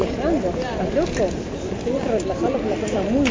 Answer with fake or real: real